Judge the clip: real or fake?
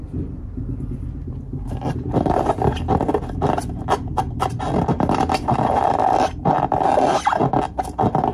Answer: fake